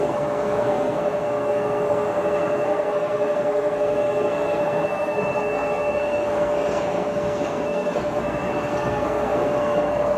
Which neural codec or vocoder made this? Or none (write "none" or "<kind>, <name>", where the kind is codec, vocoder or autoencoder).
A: codec, SNAC